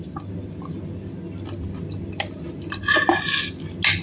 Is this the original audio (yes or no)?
yes